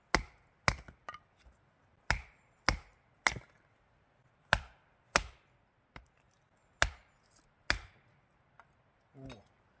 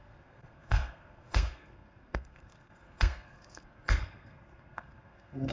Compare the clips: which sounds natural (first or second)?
first